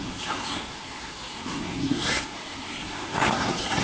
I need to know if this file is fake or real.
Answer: fake